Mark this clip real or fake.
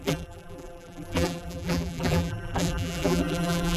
fake